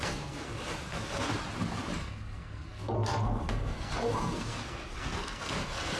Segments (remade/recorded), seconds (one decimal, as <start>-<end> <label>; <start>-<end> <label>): 0.0-1.3 remade; 1.3-2.0 recorded; 2.0-6.0 remade